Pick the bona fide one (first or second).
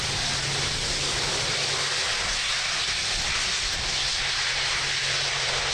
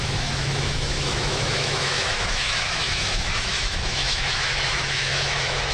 first